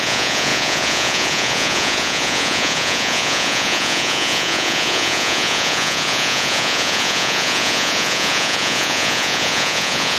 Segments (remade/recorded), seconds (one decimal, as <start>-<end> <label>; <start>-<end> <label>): 0.0-10.2 remade